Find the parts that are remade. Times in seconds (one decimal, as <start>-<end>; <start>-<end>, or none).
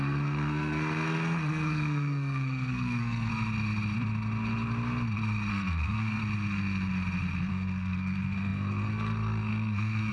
0.0-3.3; 5.5-6.2; 7.5-10.1